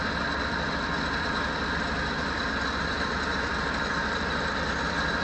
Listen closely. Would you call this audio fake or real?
fake